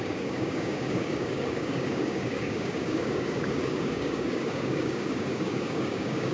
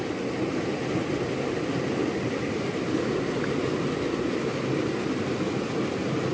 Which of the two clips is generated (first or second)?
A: first